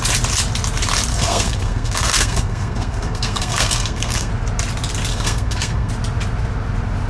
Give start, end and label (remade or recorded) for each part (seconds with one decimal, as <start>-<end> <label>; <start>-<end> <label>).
0.0-1.1 recorded; 1.1-4.3 remade; 4.3-5.1 recorded; 5.1-5.9 remade; 5.9-7.1 recorded